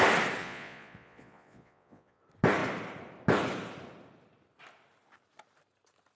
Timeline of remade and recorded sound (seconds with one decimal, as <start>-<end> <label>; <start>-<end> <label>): 0.0-0.4 recorded; 0.4-2.2 remade; 2.2-6.1 recorded